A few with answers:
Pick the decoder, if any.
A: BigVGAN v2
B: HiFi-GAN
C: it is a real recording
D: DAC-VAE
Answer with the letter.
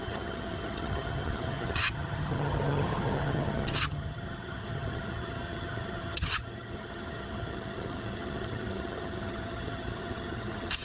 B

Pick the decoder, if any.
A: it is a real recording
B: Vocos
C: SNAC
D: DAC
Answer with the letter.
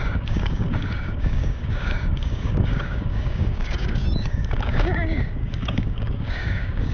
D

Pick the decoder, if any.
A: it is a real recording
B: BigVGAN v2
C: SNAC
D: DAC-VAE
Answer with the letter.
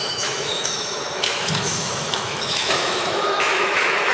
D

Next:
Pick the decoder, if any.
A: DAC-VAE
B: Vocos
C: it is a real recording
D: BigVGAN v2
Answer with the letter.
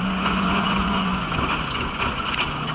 B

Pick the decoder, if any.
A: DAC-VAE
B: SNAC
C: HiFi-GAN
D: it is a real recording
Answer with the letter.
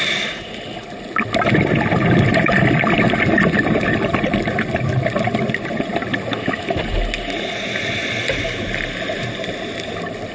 D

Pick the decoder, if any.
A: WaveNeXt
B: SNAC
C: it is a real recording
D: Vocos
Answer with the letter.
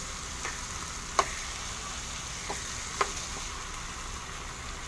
C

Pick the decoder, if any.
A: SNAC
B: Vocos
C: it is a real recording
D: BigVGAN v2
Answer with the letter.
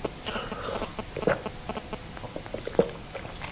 C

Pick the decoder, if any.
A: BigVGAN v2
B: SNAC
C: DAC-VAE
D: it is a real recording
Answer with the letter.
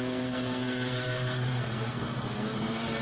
B